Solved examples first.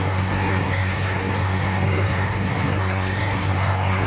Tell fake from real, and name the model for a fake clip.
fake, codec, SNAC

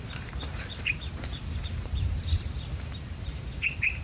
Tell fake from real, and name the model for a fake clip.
fake, vocoder, BigVGAN v2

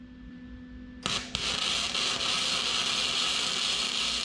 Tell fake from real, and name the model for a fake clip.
real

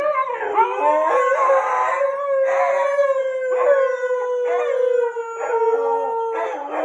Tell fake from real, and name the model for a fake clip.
real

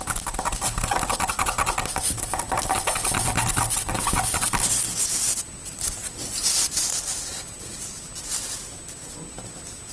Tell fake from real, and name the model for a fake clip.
real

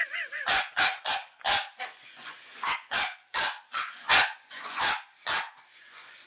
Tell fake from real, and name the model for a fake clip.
fake, vocoder, Vocos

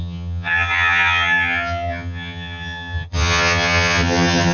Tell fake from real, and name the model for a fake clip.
fake, vocoder, HiFi-GAN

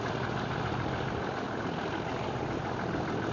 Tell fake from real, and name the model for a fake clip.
real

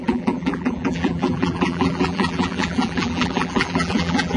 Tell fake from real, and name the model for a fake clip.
fake, vocoder, BigVGAN v2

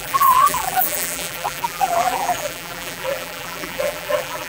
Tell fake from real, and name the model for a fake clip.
fake, vocoder, BigVGAN v2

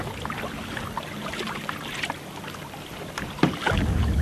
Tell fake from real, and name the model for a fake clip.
real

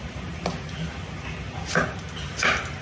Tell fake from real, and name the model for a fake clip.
real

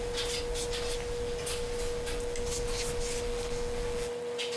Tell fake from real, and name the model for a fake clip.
real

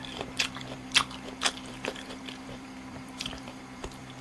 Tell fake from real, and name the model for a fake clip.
fake, vocoder, BigVGAN v2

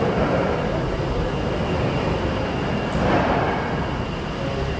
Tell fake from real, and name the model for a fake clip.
real